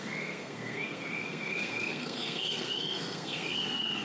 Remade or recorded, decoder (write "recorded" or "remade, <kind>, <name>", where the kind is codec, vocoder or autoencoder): remade, codec, SNAC